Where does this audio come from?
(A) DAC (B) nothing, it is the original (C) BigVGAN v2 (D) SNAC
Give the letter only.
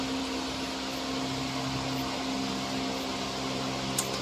B